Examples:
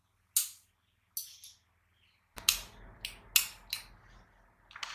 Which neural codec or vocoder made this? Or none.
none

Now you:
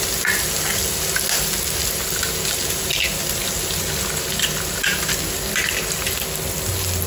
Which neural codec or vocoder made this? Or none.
none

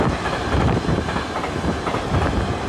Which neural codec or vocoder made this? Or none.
vocoder, BigVGAN v2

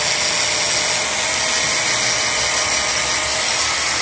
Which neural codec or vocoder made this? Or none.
none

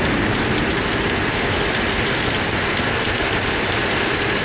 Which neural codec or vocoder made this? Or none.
none